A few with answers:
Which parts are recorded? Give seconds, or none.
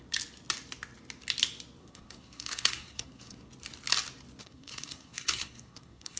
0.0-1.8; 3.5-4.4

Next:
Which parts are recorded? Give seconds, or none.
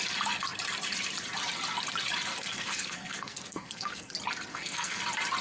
0.0-2.3; 4.1-4.5; 5.0-5.4